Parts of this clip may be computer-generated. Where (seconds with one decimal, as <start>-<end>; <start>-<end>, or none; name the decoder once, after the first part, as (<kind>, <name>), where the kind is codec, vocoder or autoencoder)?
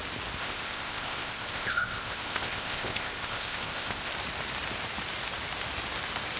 0.4-4.1 (codec, ZipCodec)